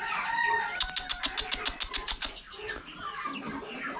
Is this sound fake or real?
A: real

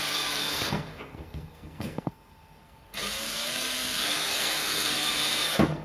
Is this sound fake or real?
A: fake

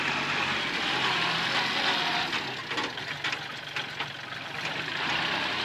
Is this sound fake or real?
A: real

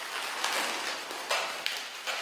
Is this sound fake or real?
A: real